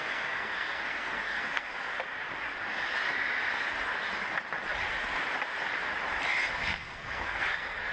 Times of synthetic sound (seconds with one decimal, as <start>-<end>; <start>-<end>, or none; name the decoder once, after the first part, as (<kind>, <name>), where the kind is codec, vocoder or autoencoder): 0.0-1.9 (codec, SNAC); 6.5-7.9